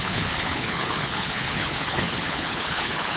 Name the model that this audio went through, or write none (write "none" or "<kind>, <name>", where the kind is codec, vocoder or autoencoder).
codec, HILCodec